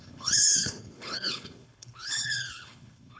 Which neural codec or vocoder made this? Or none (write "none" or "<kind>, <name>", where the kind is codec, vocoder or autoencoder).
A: codec, HILCodec